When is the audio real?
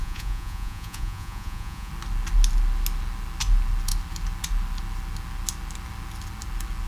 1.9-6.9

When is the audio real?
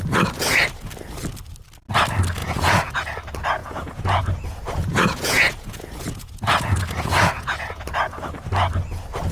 0.0-2.4; 2.9-3.6; 7.9-9.3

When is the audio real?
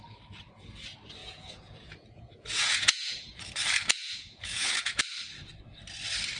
0.0-1.2; 3.4-4.0; 5.0-6.4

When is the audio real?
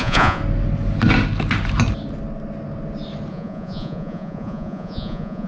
0.4-3.3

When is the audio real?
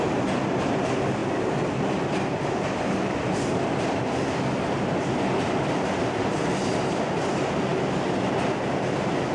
0.0-9.3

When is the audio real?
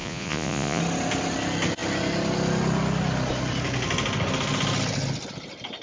0.8-5.8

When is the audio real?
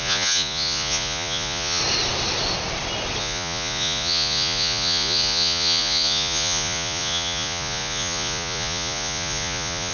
1.8-3.2